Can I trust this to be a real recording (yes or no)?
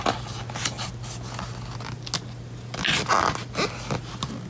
yes